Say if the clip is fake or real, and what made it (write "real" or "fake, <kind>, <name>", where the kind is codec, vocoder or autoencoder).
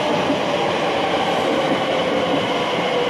real